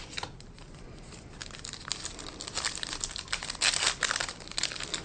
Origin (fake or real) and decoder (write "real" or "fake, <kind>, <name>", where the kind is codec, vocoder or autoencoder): real